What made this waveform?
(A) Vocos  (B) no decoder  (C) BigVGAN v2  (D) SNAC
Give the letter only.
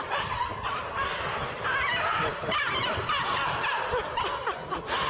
B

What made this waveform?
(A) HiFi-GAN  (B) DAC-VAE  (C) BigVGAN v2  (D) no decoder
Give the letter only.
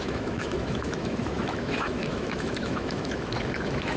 B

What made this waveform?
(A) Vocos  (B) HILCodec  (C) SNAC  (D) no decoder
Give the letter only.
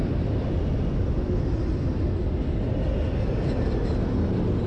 D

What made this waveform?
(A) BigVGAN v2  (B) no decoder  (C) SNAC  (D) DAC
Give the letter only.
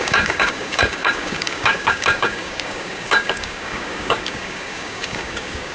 D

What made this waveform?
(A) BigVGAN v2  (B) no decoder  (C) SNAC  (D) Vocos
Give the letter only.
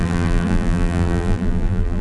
A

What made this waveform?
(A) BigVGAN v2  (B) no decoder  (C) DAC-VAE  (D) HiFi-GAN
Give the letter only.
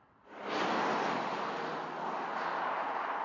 B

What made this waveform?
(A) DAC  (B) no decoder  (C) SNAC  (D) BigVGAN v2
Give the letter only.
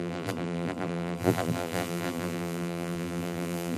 D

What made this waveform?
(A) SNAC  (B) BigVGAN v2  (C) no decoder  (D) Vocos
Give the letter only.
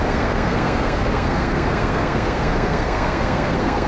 A